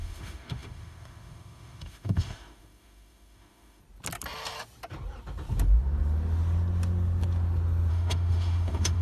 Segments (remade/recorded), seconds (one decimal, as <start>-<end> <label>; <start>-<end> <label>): 0.0-3.8 remade; 3.8-7.9 recorded; 7.9-9.0 remade